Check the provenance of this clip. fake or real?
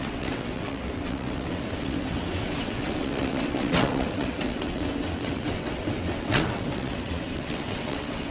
fake